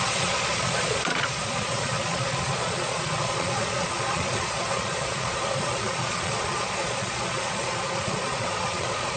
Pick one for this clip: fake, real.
fake